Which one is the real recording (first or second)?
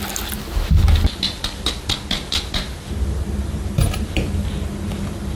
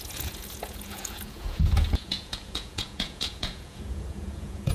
first